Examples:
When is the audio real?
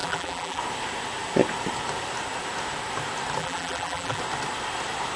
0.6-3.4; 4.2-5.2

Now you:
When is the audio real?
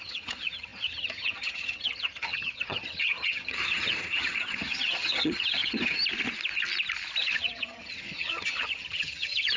6.0-7.2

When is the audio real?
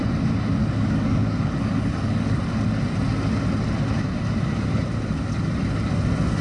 0.0-0.6; 2.4-6.4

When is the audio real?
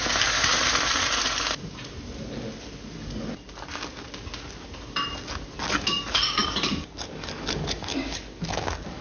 0.5-5.7